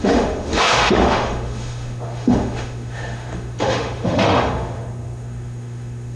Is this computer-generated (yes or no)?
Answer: yes